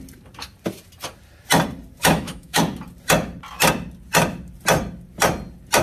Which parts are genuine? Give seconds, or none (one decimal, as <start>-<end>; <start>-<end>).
0.0-2.0; 2.6-5.8